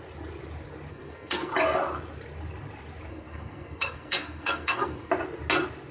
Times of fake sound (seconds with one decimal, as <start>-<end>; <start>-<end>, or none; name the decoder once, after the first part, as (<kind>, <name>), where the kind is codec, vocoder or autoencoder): 0.9-1.5 (codec, SNAC); 3.1-5.1